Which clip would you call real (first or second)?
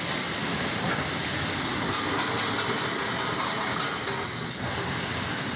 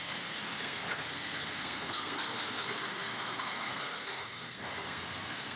first